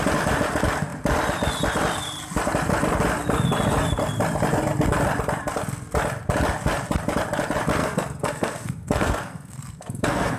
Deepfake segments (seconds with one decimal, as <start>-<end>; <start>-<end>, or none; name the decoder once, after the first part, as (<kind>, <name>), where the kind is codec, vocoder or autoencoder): 7.8-10.4 (codec, SNAC)